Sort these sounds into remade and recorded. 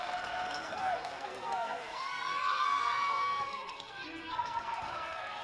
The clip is remade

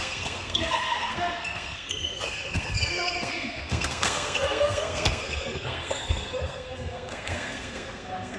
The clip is remade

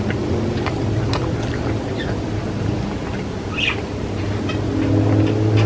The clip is recorded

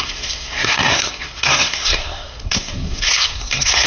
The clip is remade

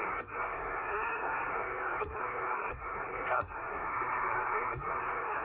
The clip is remade